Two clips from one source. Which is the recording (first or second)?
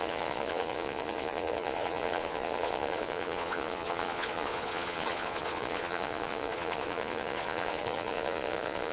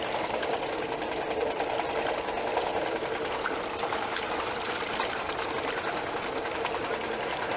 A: second